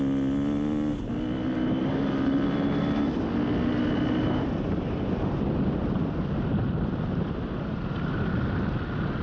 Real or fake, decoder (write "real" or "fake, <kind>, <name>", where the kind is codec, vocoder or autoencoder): real